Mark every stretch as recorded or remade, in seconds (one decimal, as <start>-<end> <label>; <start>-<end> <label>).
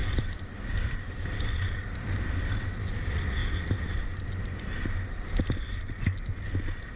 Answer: 0.0-2.5 remade; 2.5-7.0 recorded